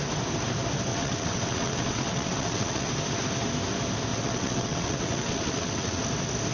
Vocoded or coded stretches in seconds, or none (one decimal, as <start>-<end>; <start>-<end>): 0.9-2.9; 4.1-6.0